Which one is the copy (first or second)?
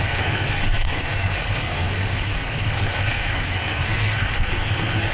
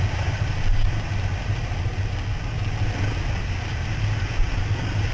first